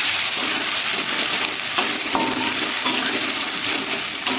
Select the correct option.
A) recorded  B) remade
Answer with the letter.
A